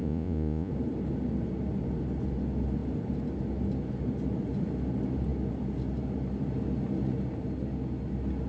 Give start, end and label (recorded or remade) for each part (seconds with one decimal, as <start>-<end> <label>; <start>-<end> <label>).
0.0-0.7 remade; 0.7-8.5 recorded

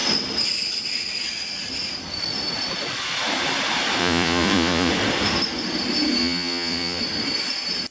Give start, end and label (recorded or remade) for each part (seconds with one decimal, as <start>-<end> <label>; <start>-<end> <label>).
0.0-4.0 recorded; 4.0-4.9 remade; 4.9-6.2 recorded; 6.2-7.0 remade; 7.0-7.9 recorded